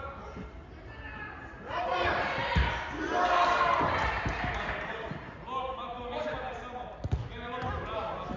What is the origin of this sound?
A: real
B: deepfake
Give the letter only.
A